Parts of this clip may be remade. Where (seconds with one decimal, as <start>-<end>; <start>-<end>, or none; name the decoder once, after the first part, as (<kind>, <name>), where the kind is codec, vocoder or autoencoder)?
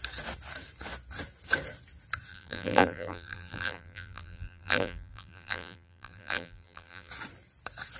2.3-7.1 (vocoder, BigVGAN v2)